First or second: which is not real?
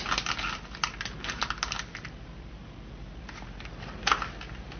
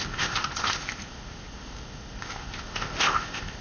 second